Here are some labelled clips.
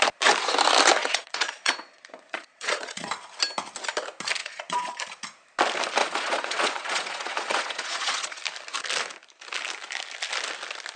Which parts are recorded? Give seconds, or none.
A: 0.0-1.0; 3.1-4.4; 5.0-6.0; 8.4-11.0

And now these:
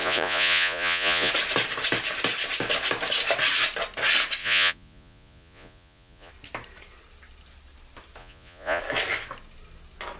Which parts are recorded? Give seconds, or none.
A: 1.3-4.4; 6.3-8.2; 8.8-10.2

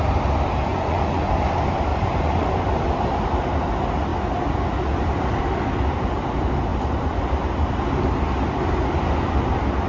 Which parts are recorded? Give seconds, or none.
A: 0.0-0.7; 1.3-1.9; 2.7-9.9

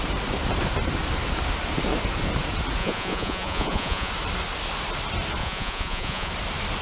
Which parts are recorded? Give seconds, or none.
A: 0.0-2.8; 4.1-5.4; 6.3-6.8

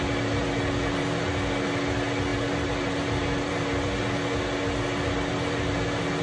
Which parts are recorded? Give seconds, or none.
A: 0.0-6.2

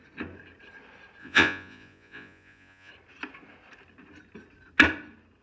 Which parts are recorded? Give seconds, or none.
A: 0.0-1.2; 2.9-5.4